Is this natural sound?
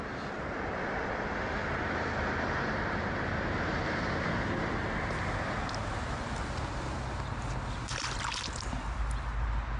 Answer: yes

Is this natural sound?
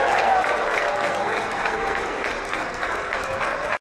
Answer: no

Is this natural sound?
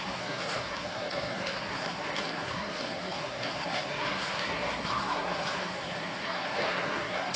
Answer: no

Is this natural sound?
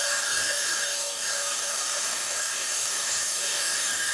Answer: no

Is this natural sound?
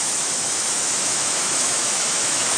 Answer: no